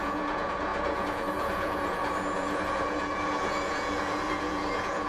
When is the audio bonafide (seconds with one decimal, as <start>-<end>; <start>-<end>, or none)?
none